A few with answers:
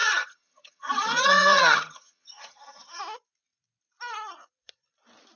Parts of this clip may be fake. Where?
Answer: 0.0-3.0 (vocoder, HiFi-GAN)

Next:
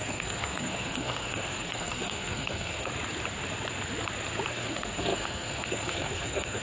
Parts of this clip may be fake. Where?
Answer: 0.0-2.9 (codec, SNAC); 4.5-6.6

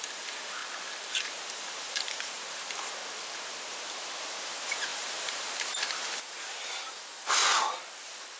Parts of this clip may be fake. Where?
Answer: 0.0-0.6 (vocoder, BigVGAN v2); 1.1-3.0; 4.3-7.4

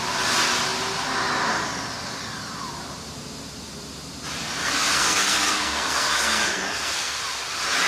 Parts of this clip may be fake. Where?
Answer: 4.6-7.2 (codec, SNAC)